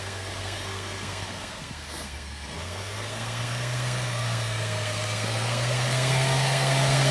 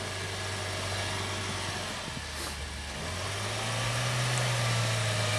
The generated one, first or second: first